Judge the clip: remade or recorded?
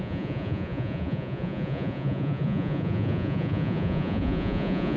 remade